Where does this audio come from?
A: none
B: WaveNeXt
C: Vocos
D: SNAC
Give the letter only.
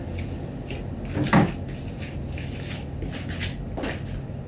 A